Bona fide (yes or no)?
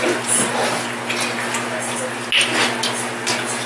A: yes